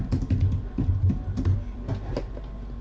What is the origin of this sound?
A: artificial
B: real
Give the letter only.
B